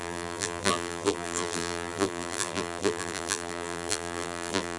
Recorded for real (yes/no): no